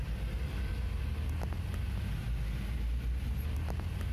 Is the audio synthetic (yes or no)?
no